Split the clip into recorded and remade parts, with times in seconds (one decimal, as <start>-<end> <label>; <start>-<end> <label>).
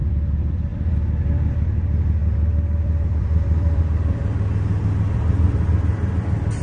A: 0.0-0.5 recorded; 0.5-6.6 remade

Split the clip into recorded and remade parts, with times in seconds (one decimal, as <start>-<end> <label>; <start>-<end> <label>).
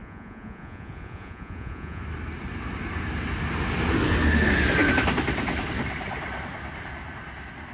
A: 0.0-2.0 remade; 2.0-7.7 recorded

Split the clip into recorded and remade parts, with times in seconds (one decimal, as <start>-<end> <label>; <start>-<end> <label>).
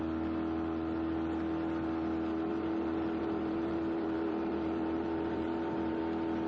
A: 0.0-2.5 recorded; 2.5-6.0 remade; 6.0-6.5 recorded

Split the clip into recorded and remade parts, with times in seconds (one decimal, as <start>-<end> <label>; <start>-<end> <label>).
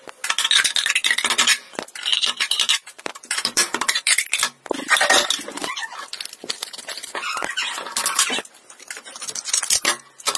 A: 0.0-2.1 recorded; 2.1-4.6 remade; 4.6-10.4 recorded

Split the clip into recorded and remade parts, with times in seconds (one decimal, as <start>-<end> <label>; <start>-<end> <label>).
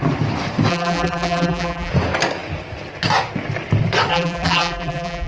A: 0.0-0.7 recorded; 0.7-1.9 remade; 1.9-4.1 recorded; 4.1-5.3 remade